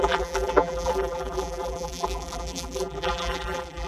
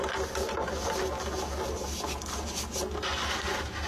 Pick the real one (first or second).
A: second